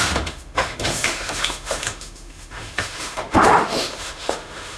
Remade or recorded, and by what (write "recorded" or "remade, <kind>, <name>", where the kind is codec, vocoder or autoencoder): remade, autoencoder, DAC-VAE